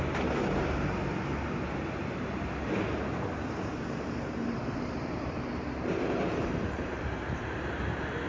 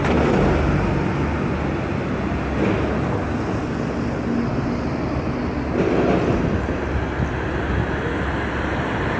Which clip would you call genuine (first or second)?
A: second